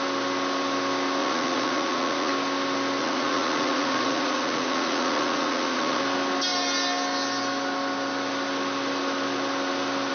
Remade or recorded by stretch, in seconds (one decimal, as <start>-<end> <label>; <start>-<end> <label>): 0.0-1.2 recorded; 1.2-2.3 remade; 2.3-3.0 recorded; 3.0-6.0 remade; 6.0-10.1 recorded